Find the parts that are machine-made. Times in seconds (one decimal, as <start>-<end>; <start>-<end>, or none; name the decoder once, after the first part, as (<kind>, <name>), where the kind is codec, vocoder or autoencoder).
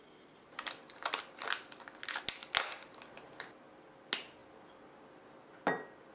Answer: none